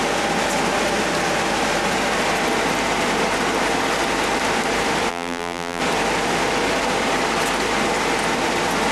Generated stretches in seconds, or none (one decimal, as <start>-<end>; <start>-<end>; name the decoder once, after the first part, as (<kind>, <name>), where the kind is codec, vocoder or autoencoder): 5.1-5.8 (vocoder, BigVGAN v2)